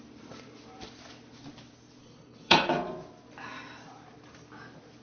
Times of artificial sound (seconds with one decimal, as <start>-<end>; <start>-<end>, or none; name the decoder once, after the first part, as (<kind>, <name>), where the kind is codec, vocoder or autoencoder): 2.0-2.7 (codec, HILCodec)